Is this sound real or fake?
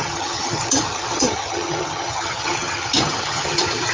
fake